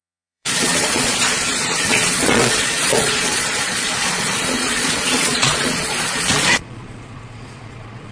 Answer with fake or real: fake